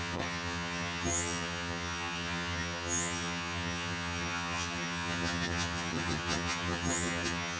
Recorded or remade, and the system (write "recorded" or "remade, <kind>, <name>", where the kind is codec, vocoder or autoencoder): remade, vocoder, HiFi-GAN